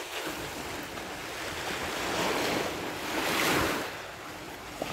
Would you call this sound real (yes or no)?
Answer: yes